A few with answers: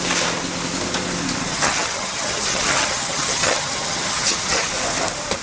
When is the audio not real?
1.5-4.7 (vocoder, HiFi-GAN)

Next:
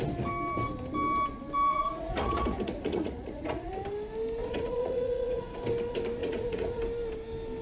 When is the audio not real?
1.7-3.7 (vocoder, Vocos); 4.4-5.6; 6.2-6.8

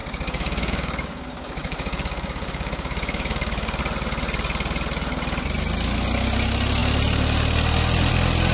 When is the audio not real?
0.0-3.8 (codec, DAC)

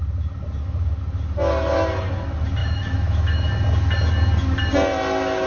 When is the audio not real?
2.6-3.5 (autoencoder, DAC-VAE)

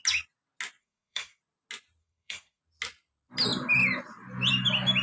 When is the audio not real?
0.8-1.4 (codec, SNAC); 2.0-2.6

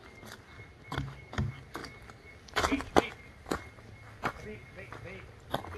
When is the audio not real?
none